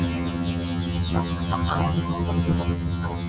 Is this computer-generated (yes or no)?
yes